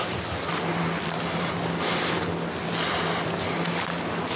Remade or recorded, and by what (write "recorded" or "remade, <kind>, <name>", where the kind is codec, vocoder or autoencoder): recorded